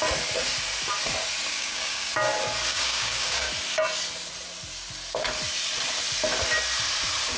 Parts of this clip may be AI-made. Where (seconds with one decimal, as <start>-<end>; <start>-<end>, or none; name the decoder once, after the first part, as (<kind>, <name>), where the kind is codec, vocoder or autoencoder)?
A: 1.5-2.1 (codec, DAC); 2.7-3.5